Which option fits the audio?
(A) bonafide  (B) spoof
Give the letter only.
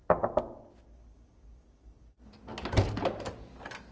A